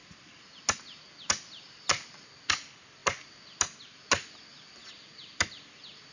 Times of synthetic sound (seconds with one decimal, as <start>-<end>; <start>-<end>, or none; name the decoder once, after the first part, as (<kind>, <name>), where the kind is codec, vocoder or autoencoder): none